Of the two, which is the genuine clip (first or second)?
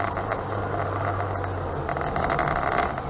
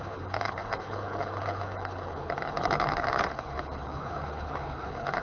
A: first